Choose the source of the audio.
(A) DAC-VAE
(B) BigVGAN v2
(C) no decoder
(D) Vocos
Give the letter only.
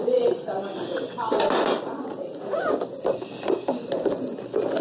C